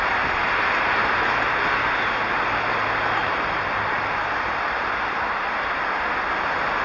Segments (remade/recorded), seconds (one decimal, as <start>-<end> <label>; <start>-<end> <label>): 0.0-3.2 recorded; 3.2-3.7 remade; 3.7-6.8 recorded